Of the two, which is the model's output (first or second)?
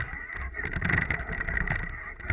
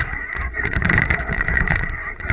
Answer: second